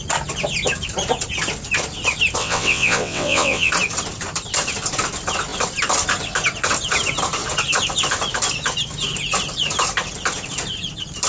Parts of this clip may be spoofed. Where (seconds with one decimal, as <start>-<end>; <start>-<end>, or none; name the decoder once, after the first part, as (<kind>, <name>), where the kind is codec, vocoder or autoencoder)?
2.4-3.7 (vocoder, WaveNeXt)